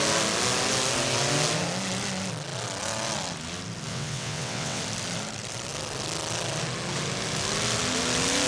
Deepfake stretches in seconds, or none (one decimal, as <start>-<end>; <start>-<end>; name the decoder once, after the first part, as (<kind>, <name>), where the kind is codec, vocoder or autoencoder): 3.9-4.8 (vocoder, WaveNeXt)